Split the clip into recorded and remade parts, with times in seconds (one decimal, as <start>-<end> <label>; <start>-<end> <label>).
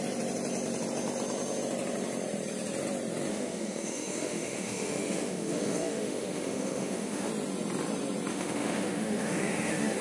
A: 0.0-3.3 recorded; 3.3-7.3 remade; 7.3-8.3 recorded; 8.3-10.0 remade